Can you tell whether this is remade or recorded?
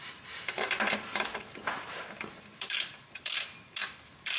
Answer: remade